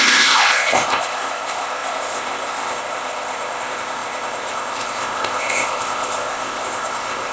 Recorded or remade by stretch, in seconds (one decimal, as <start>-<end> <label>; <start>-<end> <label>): 0.0-7.3 remade